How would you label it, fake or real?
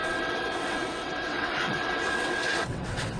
fake